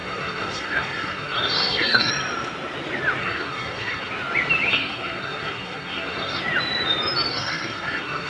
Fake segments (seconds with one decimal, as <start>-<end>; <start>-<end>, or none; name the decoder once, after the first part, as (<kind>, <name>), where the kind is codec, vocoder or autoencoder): 0.0-2.1 (codec, SNAC); 3.2-4.1; 4.7-6.4; 7.3-8.3